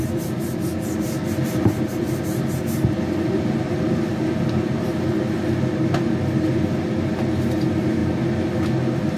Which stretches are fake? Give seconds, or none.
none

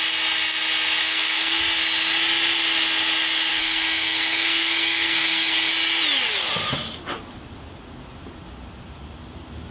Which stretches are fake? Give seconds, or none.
1.0-1.6 (codec, SNAC); 3.5-5.7

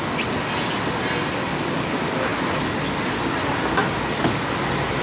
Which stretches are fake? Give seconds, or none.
none

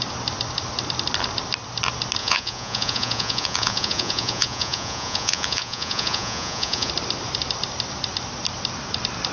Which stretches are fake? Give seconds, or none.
2.2-6.9 (vocoder, Vocos)

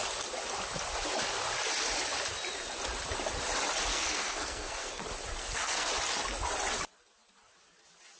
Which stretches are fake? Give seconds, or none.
3.9-5.0 (codec, SNAC); 5.4-5.9

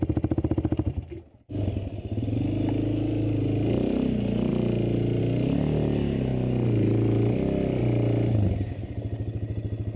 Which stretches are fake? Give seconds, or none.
none

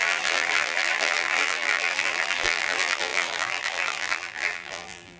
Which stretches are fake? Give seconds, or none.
0.0-5.2 (vocoder, BigVGAN v2)

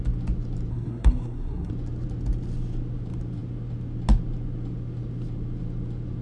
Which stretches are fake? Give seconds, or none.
0.7-1.7 (codec, SNAC)